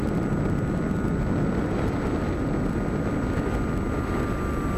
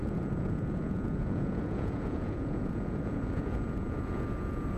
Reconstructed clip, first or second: second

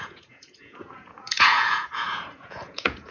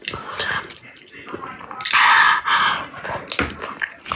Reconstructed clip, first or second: first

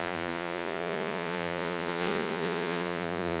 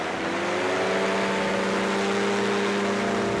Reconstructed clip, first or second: first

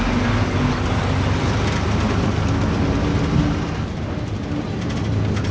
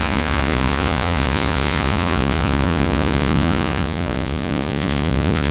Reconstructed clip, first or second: second